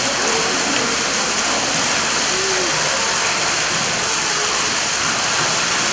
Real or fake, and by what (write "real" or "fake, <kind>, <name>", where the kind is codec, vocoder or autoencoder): real